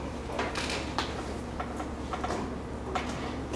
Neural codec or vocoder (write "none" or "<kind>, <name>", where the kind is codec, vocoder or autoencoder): none